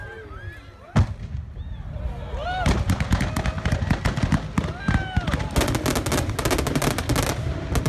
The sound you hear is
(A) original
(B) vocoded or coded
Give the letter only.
A